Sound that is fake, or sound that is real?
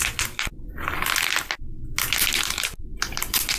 real